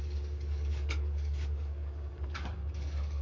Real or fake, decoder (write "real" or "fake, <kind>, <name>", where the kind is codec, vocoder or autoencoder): fake, codec, DAC